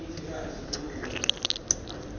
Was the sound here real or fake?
real